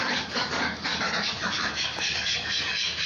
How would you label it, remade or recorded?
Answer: remade